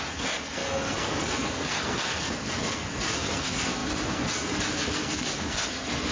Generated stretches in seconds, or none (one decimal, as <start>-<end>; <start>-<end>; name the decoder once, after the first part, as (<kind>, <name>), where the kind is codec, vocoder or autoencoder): 0.0-6.1 (codec, SNAC)